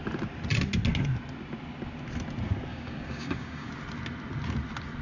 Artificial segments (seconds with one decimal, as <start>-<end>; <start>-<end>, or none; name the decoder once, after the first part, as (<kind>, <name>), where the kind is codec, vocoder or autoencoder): 2.7-3.7 (codec, DAC)